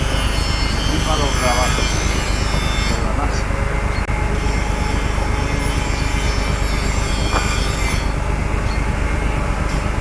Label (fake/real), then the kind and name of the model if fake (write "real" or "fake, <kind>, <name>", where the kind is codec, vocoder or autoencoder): real